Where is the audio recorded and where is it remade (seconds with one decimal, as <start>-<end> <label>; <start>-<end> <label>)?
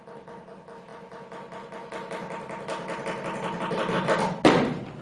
0.0-5.0 recorded